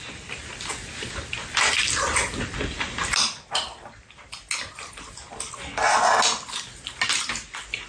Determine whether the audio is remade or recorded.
recorded